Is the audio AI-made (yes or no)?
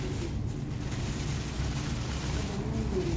no